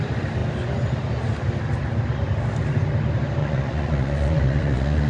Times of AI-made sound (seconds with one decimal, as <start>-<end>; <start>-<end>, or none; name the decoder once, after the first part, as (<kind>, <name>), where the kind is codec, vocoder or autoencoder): 3.4-5.1 (vocoder, Vocos)